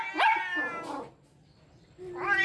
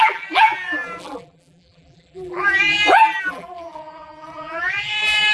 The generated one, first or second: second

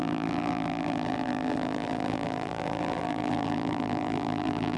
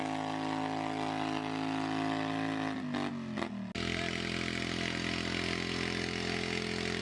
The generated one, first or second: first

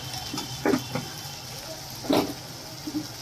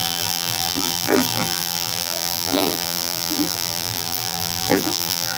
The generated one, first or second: second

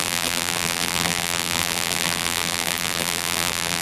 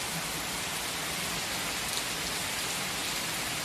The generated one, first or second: first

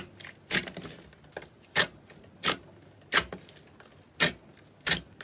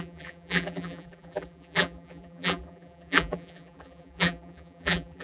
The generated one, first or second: second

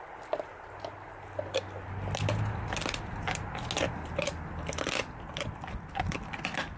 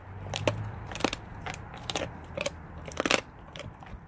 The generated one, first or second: second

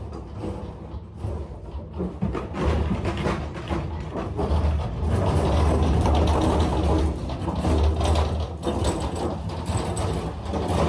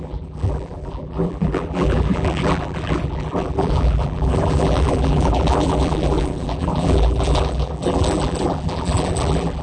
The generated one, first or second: second